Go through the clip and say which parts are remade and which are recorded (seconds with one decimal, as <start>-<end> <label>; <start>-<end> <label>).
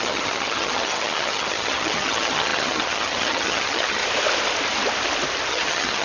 0.0-4.0 remade; 4.0-5.5 recorded; 5.5-6.0 remade